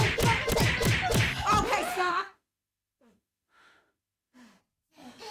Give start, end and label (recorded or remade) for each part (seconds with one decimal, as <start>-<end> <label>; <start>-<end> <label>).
0.0-1.9 recorded; 1.9-4.6 remade; 4.6-5.3 recorded